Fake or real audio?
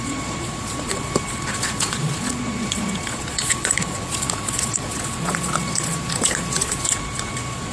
fake